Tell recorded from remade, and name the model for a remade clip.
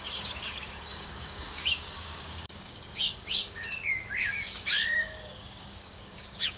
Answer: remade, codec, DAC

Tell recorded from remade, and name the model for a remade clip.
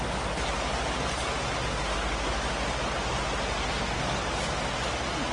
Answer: recorded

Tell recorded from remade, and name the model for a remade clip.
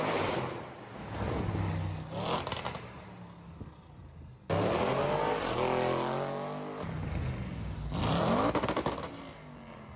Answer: recorded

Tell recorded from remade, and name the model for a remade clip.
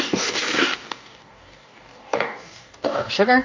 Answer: remade, codec, DAC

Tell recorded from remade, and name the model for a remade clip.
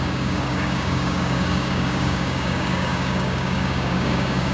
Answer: remade, codec, DAC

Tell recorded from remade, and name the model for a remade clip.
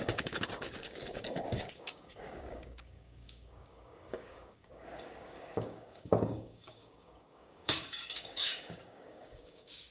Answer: remade, codec, DAC